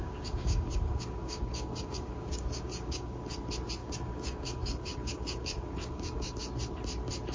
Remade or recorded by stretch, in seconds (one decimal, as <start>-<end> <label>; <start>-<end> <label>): 0.0-3.2 remade; 3.2-3.8 recorded; 3.8-6.3 remade; 6.3-7.3 recorded